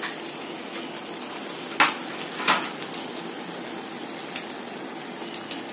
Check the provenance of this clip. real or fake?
real